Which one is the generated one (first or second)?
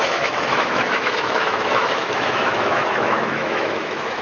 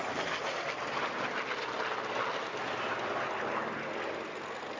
first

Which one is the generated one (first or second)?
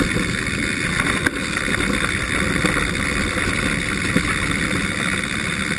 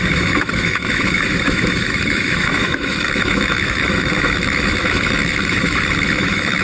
second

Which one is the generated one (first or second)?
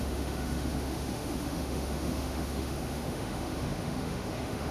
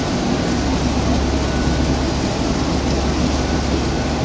first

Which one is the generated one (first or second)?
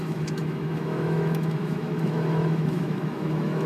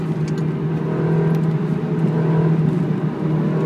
first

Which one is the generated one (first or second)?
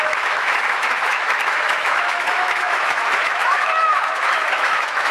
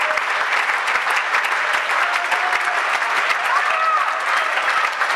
first